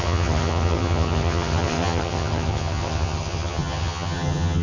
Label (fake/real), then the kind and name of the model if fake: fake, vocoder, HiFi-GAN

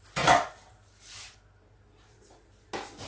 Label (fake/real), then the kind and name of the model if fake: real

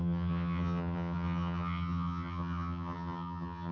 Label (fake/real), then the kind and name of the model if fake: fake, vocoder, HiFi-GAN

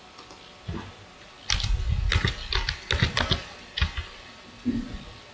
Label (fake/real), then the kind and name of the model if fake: real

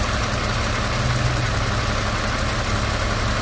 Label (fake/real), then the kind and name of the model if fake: real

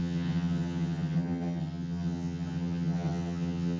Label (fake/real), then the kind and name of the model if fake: fake, vocoder, HiFi-GAN